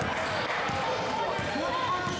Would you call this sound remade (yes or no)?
no